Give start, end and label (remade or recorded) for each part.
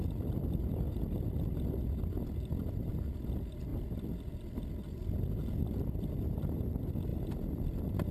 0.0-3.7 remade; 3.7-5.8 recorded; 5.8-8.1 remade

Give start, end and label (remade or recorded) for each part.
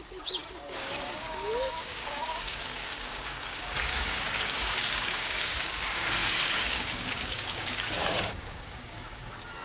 0.0-9.6 remade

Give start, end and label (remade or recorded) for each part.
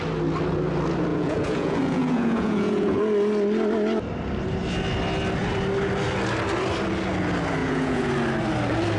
0.0-1.1 recorded; 1.1-3.0 remade; 3.0-7.6 recorded; 7.6-8.1 remade; 8.1-9.0 recorded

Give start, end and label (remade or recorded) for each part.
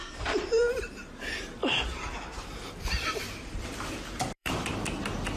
0.0-0.7 remade; 0.7-1.6 recorded; 1.6-4.8 remade; 4.8-5.4 recorded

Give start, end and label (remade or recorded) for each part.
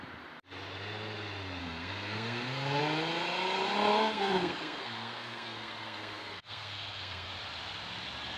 0.0-1.6 recorded; 1.6-2.8 remade; 2.8-3.9 recorded; 3.9-7.3 remade; 7.3-8.4 recorded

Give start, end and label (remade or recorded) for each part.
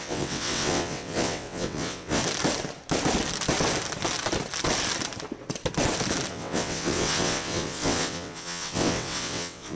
0.0-2.2 remade; 2.2-6.3 recorded; 6.3-9.8 remade